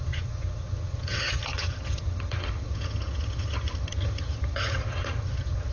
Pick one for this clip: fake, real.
fake